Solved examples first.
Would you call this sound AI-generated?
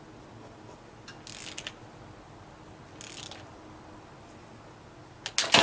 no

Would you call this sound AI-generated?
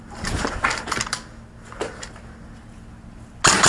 no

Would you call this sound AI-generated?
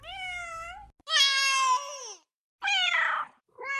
no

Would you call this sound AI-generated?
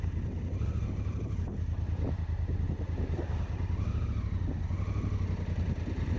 no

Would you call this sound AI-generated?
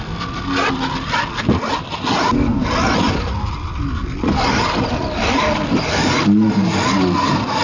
no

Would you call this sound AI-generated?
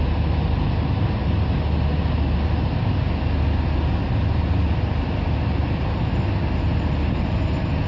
no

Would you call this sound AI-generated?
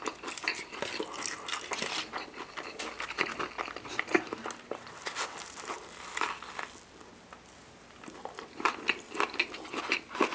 no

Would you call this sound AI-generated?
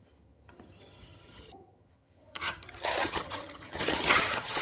yes